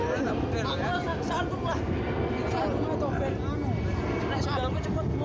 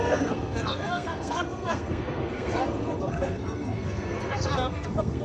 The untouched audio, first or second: first